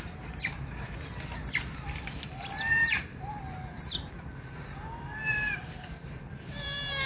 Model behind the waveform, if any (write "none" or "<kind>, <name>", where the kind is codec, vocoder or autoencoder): vocoder, BigVGAN v2